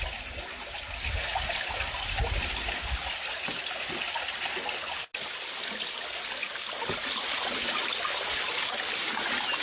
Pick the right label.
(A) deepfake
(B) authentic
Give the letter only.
B